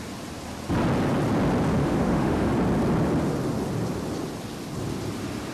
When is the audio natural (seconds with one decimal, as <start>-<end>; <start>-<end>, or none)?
0.0-1.8; 2.5-5.5